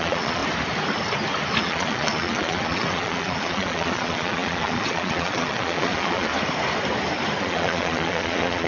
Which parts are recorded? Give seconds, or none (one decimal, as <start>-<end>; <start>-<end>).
0.4-1.6; 6.3-7.4